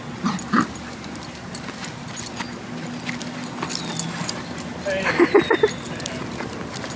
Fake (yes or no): no